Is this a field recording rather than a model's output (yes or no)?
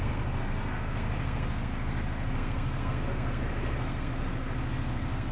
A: no